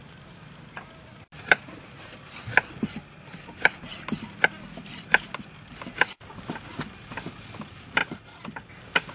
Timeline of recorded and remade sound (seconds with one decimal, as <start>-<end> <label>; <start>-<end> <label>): 0.0-9.1 recorded